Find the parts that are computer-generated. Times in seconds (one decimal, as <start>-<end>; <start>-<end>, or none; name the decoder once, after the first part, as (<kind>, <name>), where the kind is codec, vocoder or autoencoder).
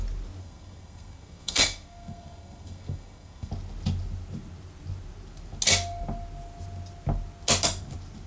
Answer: 0.4-3.5 (codec, SNAC)